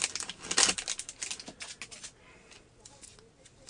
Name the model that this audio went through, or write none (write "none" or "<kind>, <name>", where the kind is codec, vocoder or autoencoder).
none